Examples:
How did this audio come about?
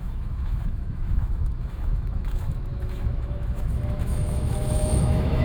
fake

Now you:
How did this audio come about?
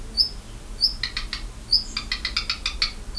real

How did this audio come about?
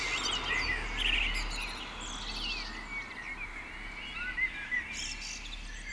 real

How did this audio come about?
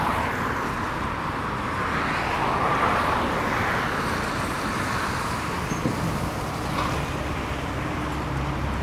real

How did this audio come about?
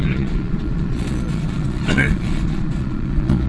fake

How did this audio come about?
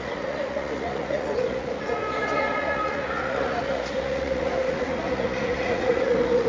fake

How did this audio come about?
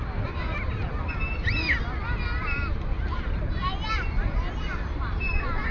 fake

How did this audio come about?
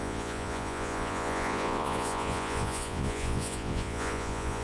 fake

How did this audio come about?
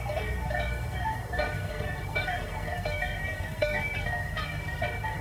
fake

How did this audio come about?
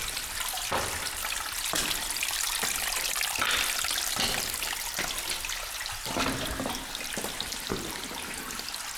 real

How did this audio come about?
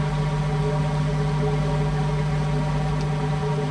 real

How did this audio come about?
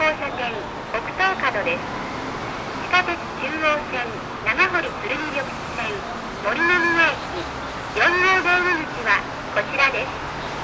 real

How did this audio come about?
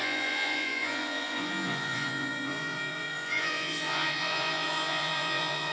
fake